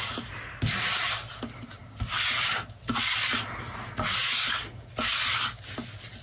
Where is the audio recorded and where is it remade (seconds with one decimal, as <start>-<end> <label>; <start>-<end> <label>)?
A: 0.0-6.2 recorded